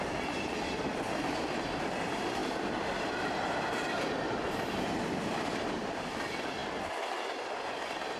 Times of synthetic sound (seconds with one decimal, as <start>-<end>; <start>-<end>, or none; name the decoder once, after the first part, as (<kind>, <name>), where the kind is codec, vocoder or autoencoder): 0.0-6.6 (vocoder, BigVGAN v2); 7.2-8.2